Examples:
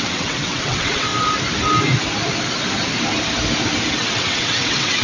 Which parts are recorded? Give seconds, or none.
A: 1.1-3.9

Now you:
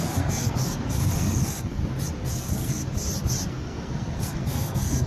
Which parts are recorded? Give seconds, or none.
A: 1.8-2.3; 2.8-3.5

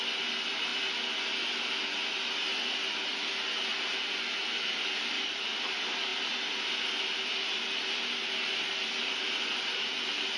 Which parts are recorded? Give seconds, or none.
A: 0.7-4.3; 6.1-9.0

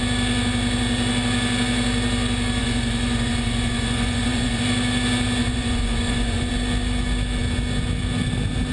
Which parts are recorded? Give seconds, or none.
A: 0.0-2.6; 4.6-5.4; 6.5-8.7

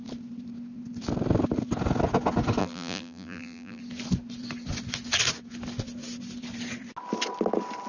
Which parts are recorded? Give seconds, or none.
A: 0.0-2.6; 3.8-7.9

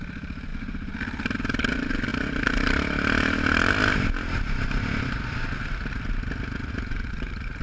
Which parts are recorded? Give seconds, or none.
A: 2.1-6.7

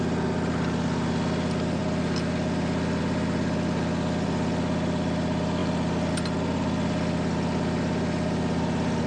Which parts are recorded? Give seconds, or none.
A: 0.0-9.1